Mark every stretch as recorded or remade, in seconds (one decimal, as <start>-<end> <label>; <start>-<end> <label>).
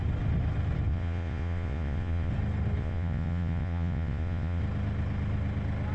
0.0-0.9 recorded; 0.9-2.3 remade; 2.3-2.8 recorded; 2.8-4.6 remade; 4.6-5.9 recorded